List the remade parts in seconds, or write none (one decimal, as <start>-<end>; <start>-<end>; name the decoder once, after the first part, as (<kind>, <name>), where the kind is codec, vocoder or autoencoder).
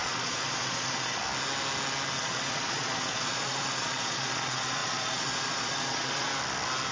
0.0-1.2 (vocoder, Vocos); 2.2-6.3